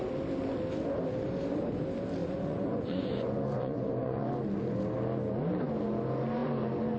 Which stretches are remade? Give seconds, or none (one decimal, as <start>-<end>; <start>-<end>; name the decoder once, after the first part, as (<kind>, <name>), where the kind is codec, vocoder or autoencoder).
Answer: 2.2-4.3 (vocoder, Vocos)